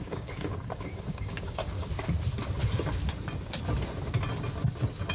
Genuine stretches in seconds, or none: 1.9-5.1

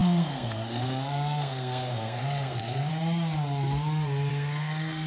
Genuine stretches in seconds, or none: 2.9-4.3